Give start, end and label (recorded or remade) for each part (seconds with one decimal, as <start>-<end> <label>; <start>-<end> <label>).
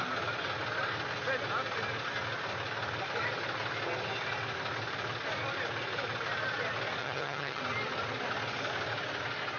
0.0-7.0 recorded; 7.0-7.6 remade; 7.6-9.6 recorded